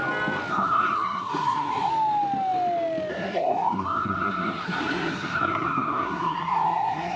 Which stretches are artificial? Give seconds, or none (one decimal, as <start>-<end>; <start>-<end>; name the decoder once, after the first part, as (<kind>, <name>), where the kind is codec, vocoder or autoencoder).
0.5-1.9 (codec, SNAC); 3.1-7.2